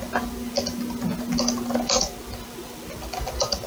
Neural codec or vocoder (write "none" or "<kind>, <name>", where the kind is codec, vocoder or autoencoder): none